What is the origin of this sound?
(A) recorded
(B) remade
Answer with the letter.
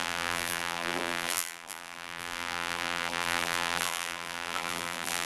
B